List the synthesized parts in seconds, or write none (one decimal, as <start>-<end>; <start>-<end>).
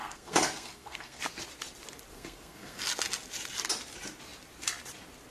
0.0-1.2; 2.1-2.8